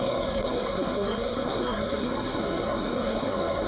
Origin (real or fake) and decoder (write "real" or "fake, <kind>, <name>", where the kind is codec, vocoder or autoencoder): fake, codec, SNAC